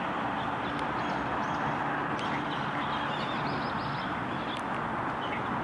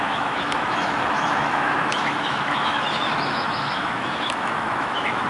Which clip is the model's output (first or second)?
second